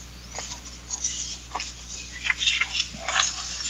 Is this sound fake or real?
real